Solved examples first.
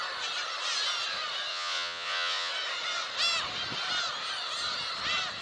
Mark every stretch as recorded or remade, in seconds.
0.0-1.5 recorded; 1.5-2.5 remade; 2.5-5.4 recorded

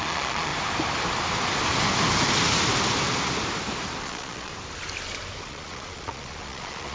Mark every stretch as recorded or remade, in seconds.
0.0-0.5 remade; 0.5-4.0 recorded; 4.0-4.5 remade; 4.5-5.4 recorded; 5.4-6.9 remade